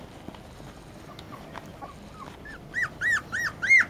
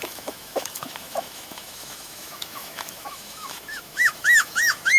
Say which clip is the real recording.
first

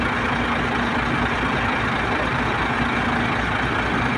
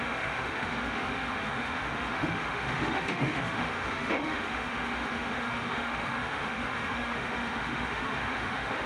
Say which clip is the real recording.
first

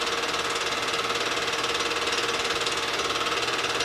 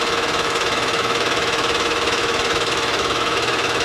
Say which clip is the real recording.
first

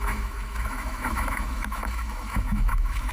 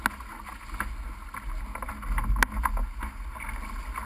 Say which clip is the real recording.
second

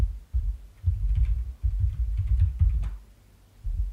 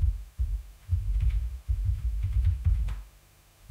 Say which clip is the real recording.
first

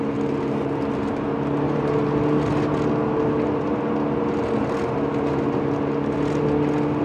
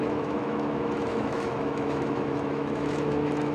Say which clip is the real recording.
first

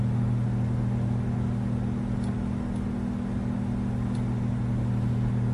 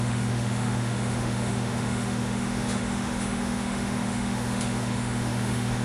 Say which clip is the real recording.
first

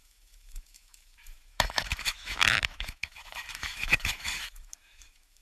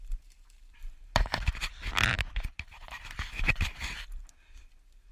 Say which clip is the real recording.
second